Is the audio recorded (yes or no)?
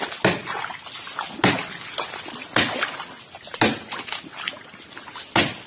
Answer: yes